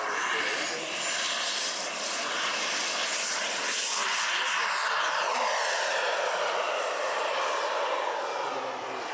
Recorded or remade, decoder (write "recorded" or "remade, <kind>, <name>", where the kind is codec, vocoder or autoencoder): recorded